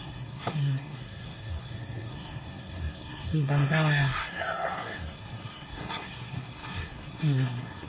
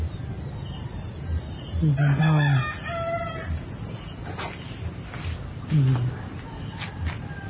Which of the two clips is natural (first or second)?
second